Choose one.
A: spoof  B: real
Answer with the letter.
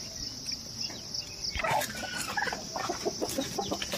B